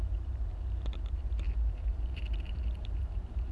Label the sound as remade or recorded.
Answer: remade